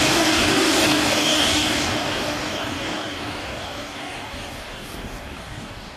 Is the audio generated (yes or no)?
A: yes